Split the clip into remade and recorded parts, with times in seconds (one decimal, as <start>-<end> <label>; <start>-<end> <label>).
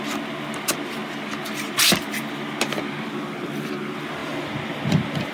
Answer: 0.0-5.3 recorded